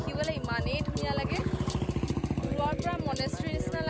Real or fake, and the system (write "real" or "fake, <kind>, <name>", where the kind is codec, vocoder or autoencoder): real